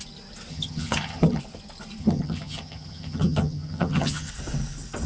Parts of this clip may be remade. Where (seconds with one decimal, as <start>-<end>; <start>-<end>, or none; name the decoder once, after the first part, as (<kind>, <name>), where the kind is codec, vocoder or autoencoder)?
0.5-1.4 (vocoder, HiFi-GAN); 2.0-4.3